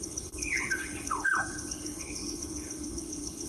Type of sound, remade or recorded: remade